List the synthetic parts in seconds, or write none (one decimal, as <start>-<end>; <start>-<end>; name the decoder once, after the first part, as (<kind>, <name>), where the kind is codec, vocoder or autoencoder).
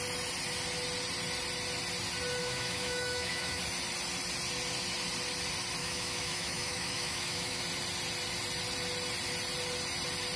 2.4-3.6 (autoencoder, DAC-VAE); 5.8-7.6